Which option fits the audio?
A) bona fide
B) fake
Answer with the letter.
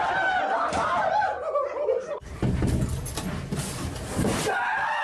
A